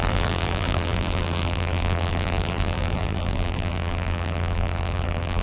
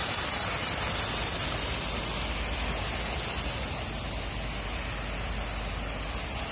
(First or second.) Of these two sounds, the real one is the second